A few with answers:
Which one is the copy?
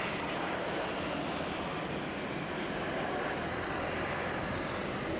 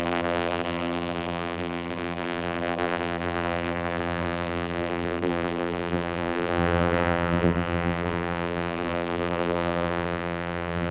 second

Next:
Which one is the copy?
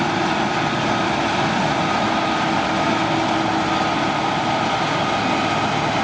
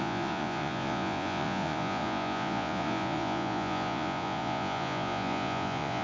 second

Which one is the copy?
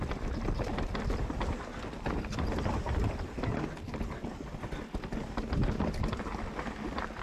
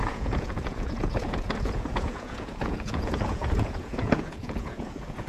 second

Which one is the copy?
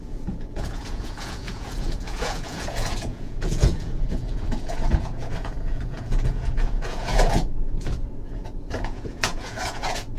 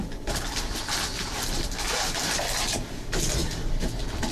first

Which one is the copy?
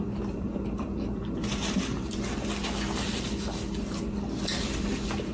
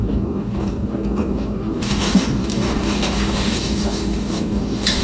second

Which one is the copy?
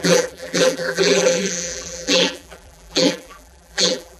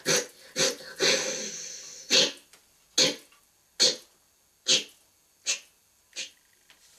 first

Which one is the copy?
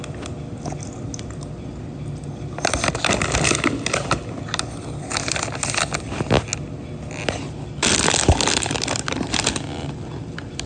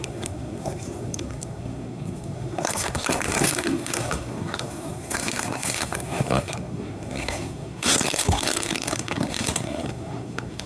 second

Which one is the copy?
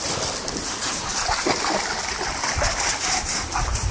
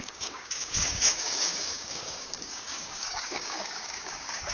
second